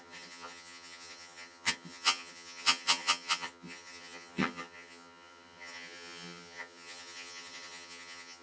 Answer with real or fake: fake